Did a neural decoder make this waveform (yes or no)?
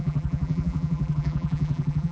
yes